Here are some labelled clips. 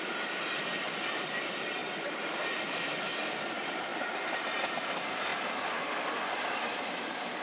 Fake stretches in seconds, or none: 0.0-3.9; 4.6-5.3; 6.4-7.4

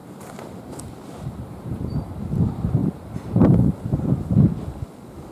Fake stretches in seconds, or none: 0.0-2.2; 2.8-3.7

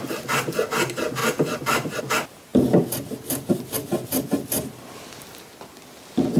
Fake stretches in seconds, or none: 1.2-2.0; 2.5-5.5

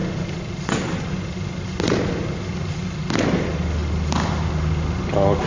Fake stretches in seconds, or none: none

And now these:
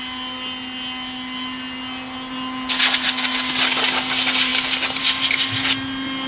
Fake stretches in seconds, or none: none

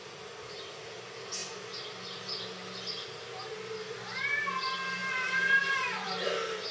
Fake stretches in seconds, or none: 5.0-6.3

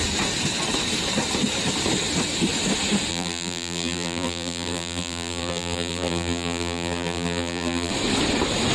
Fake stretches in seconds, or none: 3.1-7.9

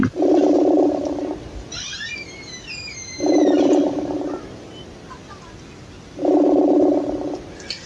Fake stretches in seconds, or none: 0.0-4.2